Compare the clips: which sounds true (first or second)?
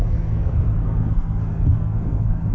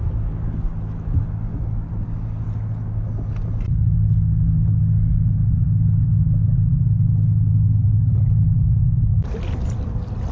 second